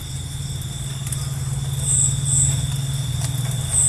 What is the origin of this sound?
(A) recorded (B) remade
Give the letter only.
A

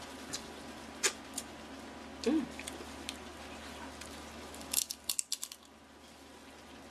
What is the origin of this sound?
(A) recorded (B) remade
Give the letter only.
A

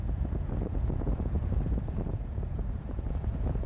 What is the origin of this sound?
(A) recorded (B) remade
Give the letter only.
B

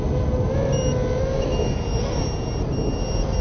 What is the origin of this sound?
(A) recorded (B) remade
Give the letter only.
A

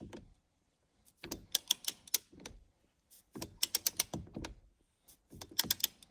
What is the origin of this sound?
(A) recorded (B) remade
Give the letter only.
A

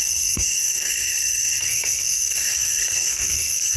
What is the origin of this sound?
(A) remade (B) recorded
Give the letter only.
A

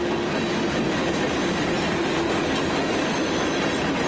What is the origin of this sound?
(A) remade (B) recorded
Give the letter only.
B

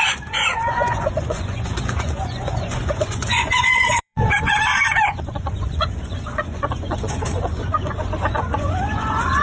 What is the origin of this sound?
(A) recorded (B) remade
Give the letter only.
B